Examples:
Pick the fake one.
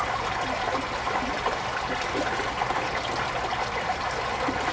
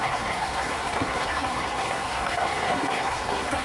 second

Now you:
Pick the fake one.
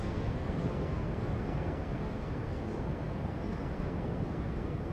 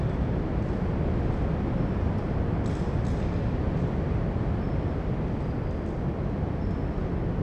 first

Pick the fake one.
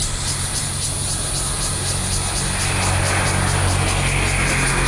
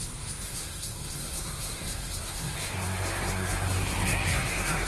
second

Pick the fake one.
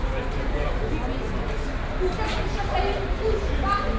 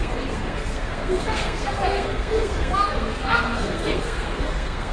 second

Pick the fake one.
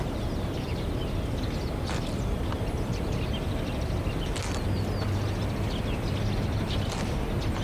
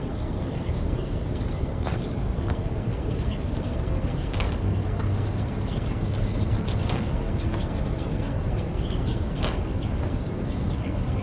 second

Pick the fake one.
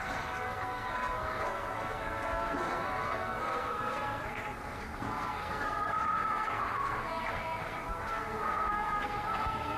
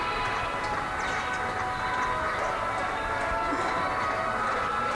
first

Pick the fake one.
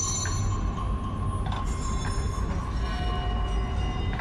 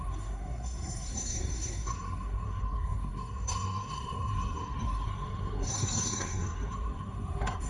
second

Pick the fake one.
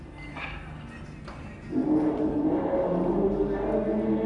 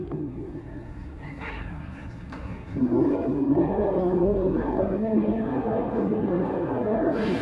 second